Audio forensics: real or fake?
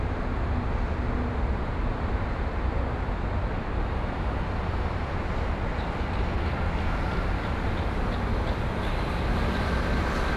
real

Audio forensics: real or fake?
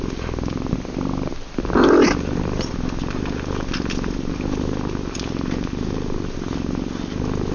real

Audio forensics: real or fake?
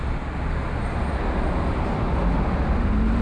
real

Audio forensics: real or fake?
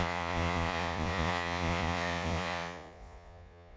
fake